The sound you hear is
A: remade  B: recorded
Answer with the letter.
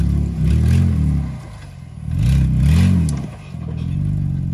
B